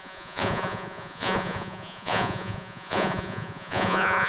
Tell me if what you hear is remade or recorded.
remade